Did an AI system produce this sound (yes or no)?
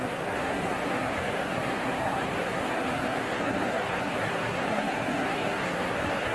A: yes